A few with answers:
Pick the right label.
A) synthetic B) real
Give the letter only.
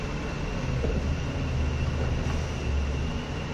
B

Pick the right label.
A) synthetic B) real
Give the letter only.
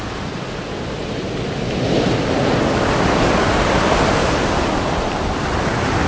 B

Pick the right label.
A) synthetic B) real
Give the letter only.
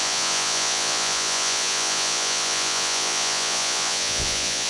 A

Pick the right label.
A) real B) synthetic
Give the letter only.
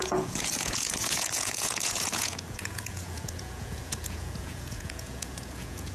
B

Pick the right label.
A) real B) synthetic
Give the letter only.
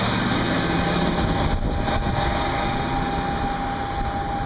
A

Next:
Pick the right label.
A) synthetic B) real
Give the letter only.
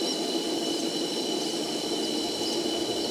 B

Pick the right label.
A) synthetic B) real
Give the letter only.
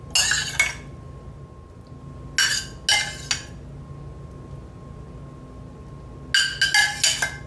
B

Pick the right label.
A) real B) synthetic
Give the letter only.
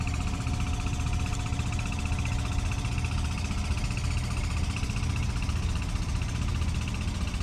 A